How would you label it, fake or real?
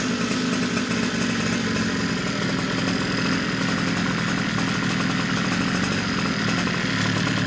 real